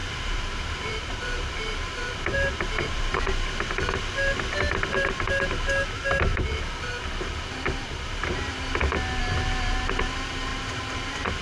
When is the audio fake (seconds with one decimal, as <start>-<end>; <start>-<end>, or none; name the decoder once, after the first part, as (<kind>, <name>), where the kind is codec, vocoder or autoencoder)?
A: 0.0-3.2 (vocoder, BigVGAN v2); 6.3-8.6; 10.5-11.4